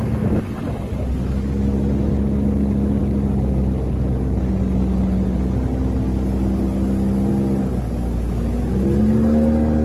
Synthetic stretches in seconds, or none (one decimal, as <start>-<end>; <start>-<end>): none